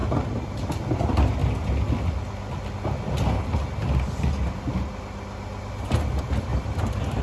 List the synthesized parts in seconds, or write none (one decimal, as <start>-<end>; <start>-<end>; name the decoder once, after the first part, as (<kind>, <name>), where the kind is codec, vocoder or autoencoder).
0.7-1.4 (vocoder, BigVGAN v2); 5.7-7.2